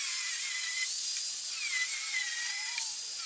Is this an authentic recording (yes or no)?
yes